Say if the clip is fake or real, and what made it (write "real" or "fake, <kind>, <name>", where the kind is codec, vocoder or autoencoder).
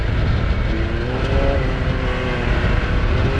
real